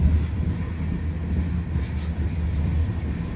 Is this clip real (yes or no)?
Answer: yes